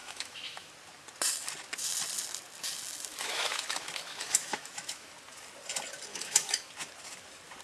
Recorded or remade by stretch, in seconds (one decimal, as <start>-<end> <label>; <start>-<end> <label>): 0.0-0.7 remade; 0.7-3.1 recorded; 3.1-5.1 remade; 5.1-6.1 recorded; 6.1-6.7 remade; 6.7-7.6 recorded